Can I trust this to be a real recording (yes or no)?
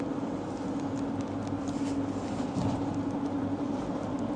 yes